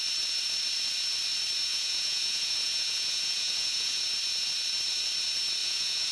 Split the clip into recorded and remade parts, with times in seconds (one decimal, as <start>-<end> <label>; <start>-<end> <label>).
0.0-1.7 recorded; 1.7-4.0 remade; 4.0-5.6 recorded; 5.6-6.1 remade